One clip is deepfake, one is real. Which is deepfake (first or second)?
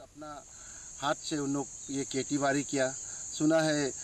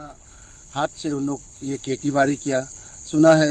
second